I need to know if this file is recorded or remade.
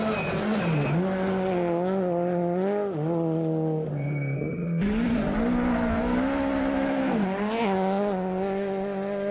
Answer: recorded